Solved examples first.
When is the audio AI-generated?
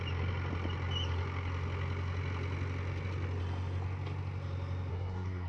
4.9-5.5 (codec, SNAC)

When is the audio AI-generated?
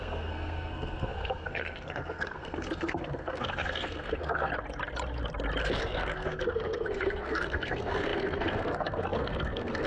0.0-4.5 (codec, SNAC); 5.6-9.9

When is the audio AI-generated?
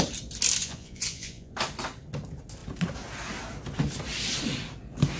0.6-1.5 (vocoder, Vocos)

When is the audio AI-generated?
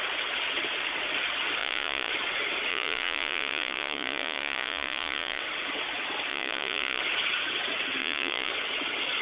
1.6-2.1 (vocoder, Vocos); 2.7-5.4; 6.3-7.0; 8.0-8.5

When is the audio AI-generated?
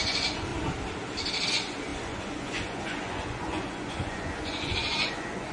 0.0-0.5 (vocoder, Vocos); 1.5-5.5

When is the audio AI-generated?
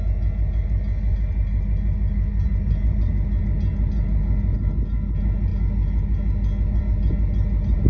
none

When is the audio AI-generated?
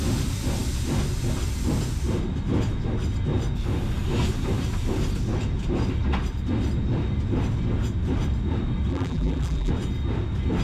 8.9-9.7 (vocoder, BigVGAN v2)